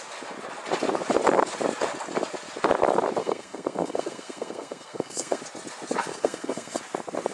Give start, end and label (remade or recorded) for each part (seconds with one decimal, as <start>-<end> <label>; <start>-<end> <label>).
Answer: 0.0-3.2 recorded; 3.2-5.4 remade; 5.4-6.1 recorded; 6.1-6.8 remade; 6.8-7.3 recorded